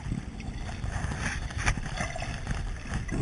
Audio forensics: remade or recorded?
recorded